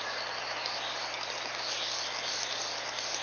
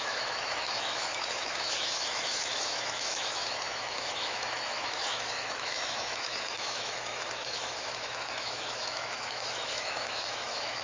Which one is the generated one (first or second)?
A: second